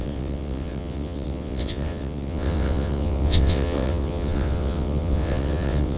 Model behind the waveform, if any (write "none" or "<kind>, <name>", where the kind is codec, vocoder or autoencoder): vocoder, WaveNeXt